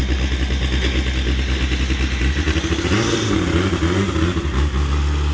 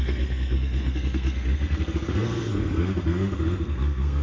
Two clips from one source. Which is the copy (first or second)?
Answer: second